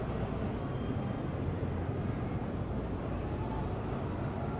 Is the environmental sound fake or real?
real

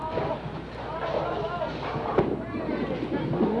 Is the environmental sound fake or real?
real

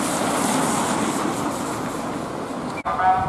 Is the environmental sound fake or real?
real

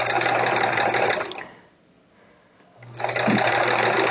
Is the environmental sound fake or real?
real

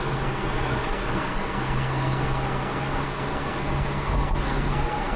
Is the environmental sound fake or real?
fake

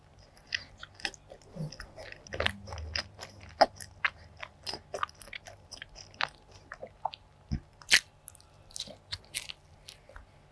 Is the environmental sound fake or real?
real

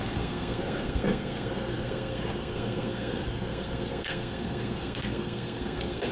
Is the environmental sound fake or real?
fake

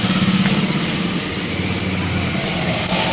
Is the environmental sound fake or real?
real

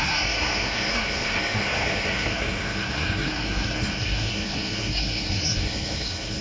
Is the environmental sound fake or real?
fake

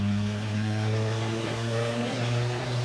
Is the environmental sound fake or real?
fake